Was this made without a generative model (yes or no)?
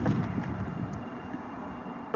no